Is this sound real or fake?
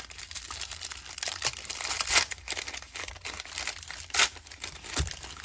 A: real